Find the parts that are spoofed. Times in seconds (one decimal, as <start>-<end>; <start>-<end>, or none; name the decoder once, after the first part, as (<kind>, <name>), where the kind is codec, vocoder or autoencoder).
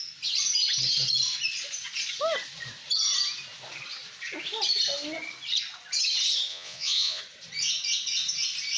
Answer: 6.5-7.2 (vocoder, Vocos)